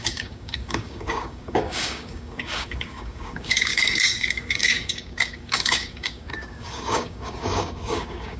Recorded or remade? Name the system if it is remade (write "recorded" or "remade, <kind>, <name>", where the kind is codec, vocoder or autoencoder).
remade, codec, DAC